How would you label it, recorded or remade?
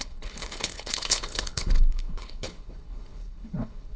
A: remade